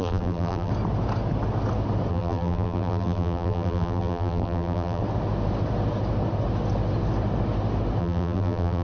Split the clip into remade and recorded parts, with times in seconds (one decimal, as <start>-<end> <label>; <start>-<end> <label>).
0.0-0.7 remade; 0.7-2.1 recorded; 2.1-5.0 remade; 5.0-8.0 recorded; 8.0-8.8 remade